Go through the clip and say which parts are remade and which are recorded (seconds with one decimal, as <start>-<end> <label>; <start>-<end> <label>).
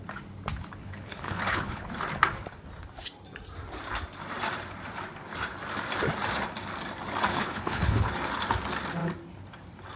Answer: 0.0-0.8 recorded; 0.8-1.9 remade; 1.9-7.3 recorded; 7.3-8.1 remade; 8.1-10.0 recorded